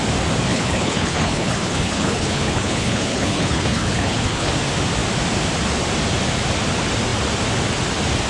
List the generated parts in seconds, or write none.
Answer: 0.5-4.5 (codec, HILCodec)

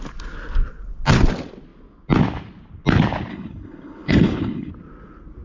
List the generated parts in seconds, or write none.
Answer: 3.3-4.7 (codec, HILCodec)

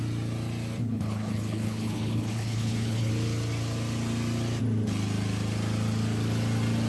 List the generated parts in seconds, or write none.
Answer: 0.8-3.1 (codec, HILCodec)

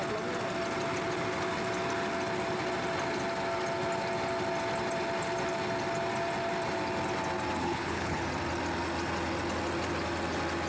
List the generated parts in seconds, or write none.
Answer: 7.6-8.2 (codec, HILCodec)

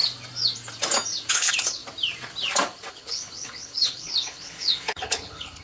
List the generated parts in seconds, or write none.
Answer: 1.3-1.8 (codec, HILCodec); 2.9-5.6